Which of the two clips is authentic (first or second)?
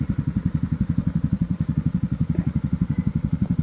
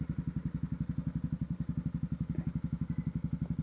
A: second